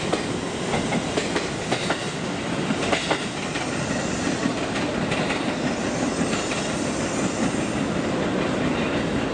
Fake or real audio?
real